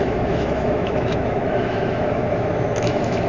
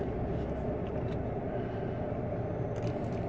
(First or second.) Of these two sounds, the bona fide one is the second